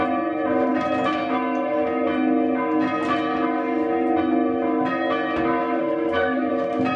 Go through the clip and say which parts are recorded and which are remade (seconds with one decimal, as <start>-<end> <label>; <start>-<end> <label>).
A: 0.0-5.8 recorded; 5.8-6.5 remade; 6.5-7.0 recorded